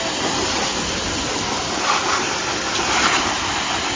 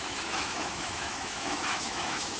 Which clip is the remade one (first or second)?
second